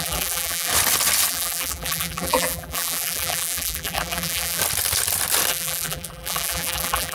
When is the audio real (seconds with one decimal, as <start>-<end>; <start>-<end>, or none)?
0.7-1.3; 4.6-5.5